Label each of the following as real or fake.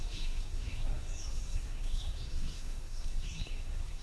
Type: fake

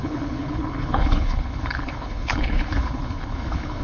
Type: fake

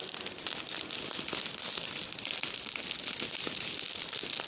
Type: real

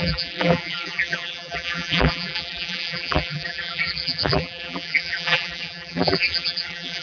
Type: fake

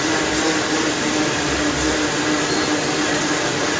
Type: real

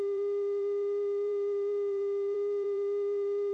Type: fake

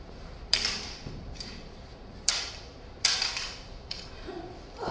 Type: fake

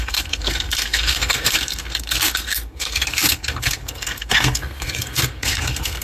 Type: fake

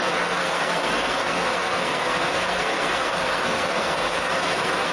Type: fake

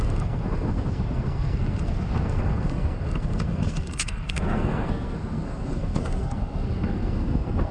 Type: fake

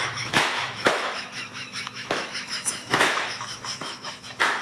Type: fake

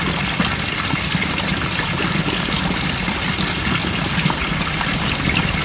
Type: real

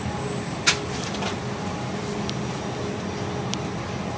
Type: real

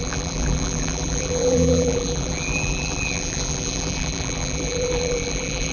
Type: fake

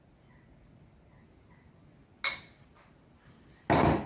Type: real